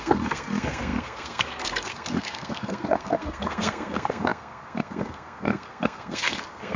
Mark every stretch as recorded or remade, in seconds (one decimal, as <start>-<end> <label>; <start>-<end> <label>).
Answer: 0.0-6.8 remade